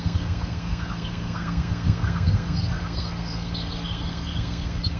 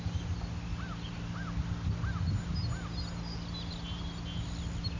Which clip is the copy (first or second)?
first